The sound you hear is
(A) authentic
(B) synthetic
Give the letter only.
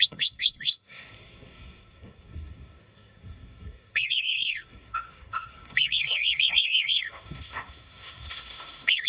B